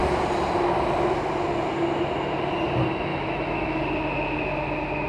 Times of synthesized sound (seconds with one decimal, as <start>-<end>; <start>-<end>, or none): 3.1-3.8